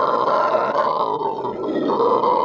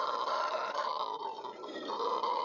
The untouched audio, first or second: first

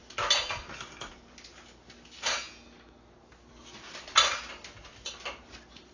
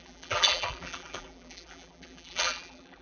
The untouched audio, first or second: first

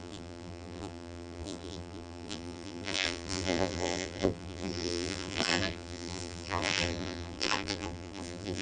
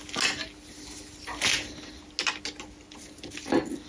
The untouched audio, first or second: second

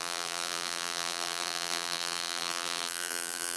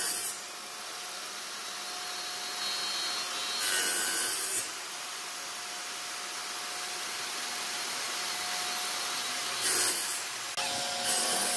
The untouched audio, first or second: second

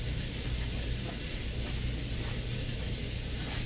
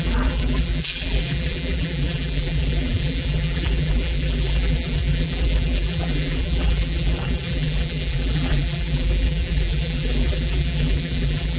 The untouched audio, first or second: first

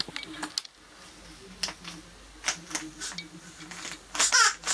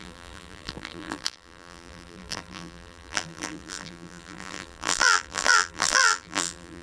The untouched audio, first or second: first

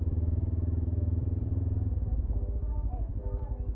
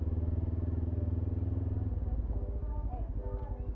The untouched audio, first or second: second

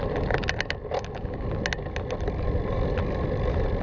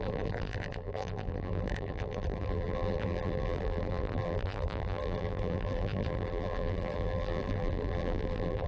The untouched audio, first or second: first